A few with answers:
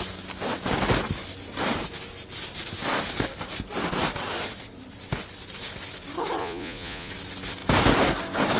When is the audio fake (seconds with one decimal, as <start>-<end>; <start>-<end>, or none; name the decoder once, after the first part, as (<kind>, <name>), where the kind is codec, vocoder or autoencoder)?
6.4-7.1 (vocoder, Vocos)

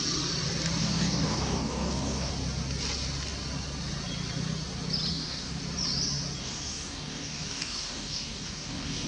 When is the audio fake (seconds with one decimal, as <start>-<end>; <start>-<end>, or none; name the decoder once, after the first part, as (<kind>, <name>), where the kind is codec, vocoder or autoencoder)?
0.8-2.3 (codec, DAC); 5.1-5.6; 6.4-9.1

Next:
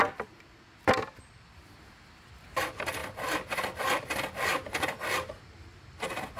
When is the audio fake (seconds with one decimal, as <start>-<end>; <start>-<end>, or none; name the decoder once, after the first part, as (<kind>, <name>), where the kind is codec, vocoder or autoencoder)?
none

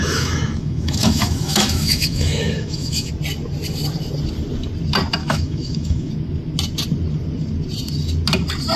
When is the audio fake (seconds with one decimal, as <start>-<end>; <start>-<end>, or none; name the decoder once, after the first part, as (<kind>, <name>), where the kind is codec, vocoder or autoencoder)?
0.0-3.1 (autoencoder, DAC-VAE); 5.2-6.1

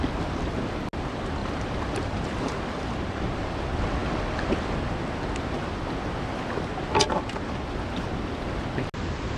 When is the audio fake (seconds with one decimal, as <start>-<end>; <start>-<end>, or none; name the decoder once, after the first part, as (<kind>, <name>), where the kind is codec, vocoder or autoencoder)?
1.4-3.4 (vocoder, BigVGAN v2)

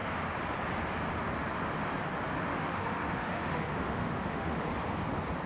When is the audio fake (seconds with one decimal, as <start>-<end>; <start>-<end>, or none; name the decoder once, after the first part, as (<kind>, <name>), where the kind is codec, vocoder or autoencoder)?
2.5-4.6 (autoencoder, DAC-VAE)